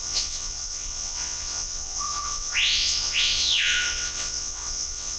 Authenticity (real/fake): fake